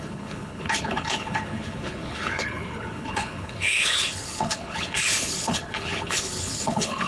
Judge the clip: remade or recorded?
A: remade